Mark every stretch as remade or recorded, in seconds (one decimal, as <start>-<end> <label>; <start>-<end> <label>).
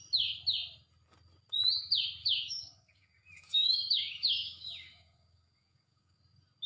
0.0-2.2 recorded; 2.2-6.2 remade; 6.2-6.7 recorded